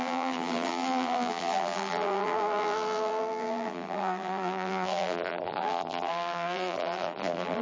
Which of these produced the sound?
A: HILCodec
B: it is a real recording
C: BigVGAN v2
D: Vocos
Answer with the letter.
C